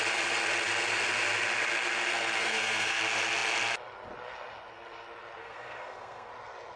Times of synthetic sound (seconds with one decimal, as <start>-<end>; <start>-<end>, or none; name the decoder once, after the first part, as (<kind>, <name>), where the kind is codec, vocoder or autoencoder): 2.4-3.0 (codec, SNAC); 5.4-6.3